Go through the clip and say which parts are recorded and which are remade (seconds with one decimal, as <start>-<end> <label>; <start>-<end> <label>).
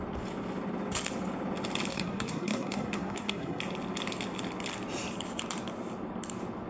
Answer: 0.0-1.9 recorded; 1.9-3.6 remade; 3.6-6.7 recorded